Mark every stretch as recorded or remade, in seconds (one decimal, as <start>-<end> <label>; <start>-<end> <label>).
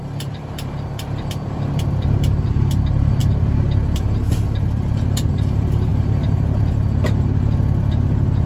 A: 0.0-5.9 remade; 5.9-8.5 recorded